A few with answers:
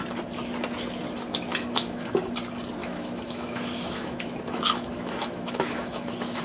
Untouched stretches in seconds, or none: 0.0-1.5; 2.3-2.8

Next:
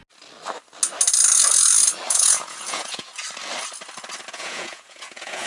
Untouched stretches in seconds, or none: 0.0-2.1; 3.1-4.3

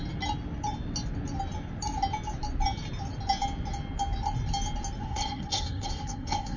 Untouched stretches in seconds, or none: 0.0-5.0

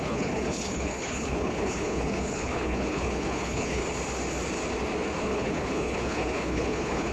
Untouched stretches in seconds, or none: 3.8-5.2

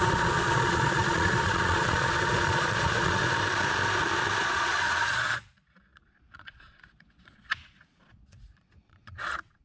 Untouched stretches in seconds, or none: 3.2-4.4

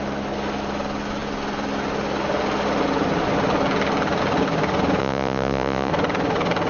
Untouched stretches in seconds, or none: 0.0-5.0; 5.9-6.7

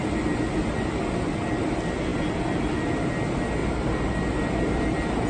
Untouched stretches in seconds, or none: 0.0-5.3